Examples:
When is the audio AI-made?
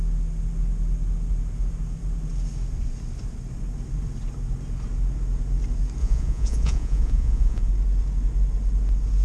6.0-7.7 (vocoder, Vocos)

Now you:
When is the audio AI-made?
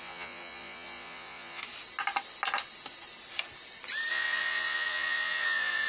0.0-1.6 (vocoder, Vocos); 4.1-5.9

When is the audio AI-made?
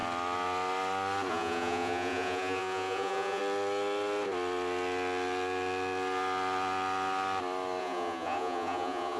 1.3-3.4 (vocoder, Vocos); 7.8-9.2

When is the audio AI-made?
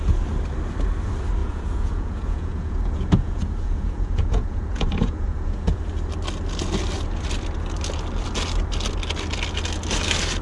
1.4-5.8 (vocoder, Vocos)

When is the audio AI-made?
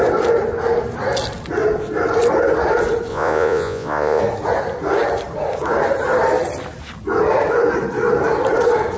3.1-4.2 (vocoder, Vocos)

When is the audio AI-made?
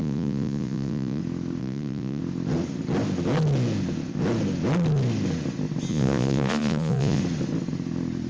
0.0-1.2 (vocoder, Vocos); 1.6-2.2; 5.9-7.2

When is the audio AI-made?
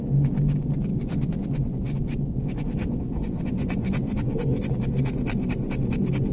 0.9-4.7 (vocoder, Vocos)